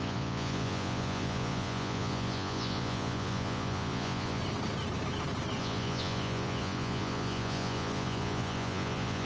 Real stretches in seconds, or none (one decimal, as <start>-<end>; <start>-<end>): 4.4-5.6